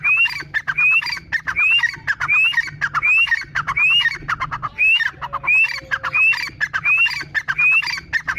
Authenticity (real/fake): real